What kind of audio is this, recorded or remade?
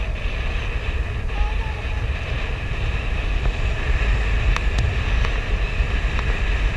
recorded